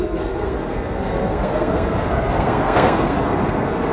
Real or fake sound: fake